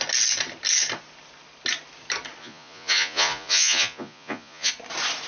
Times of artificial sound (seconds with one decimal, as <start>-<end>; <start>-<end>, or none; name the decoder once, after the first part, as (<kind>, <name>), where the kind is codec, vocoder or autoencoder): 2.4-4.7 (vocoder, Vocos)